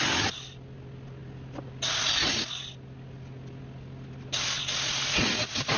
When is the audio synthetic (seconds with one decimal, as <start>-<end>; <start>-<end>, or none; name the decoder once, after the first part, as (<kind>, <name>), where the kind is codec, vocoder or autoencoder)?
none